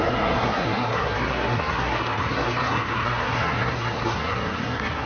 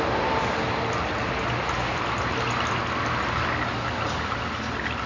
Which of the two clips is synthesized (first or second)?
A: first